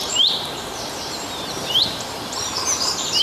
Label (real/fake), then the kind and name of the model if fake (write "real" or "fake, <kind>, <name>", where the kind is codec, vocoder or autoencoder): fake, vocoder, BigVGAN v2